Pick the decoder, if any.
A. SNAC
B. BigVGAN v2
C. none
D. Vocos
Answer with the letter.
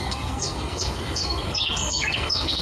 A